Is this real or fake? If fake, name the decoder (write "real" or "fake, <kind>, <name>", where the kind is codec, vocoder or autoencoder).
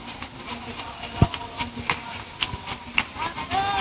real